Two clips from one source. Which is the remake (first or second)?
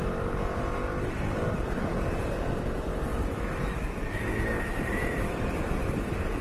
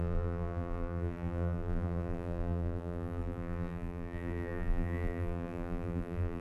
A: second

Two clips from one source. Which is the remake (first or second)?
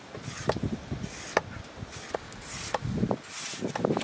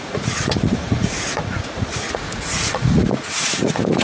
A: second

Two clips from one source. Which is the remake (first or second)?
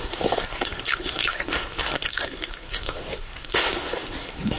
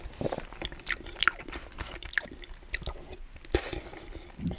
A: first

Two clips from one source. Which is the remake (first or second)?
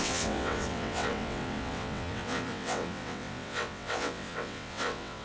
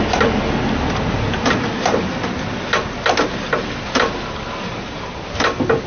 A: first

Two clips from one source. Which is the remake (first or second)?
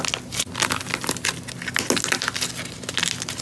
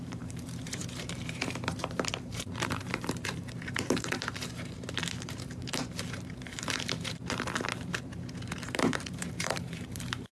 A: second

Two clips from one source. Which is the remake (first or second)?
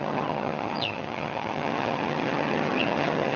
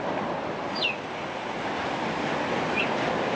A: first